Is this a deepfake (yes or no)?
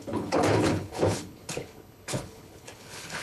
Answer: yes